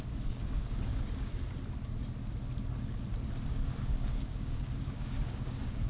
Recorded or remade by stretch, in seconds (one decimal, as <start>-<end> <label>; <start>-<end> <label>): 0.0-1.3 remade; 1.3-3.5 recorded; 3.5-5.9 remade